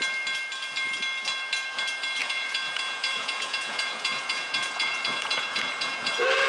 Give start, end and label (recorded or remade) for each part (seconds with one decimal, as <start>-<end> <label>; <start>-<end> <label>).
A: 0.0-2.2 recorded; 2.2-6.1 remade; 6.1-6.5 recorded